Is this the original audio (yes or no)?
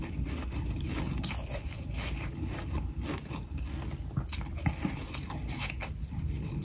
yes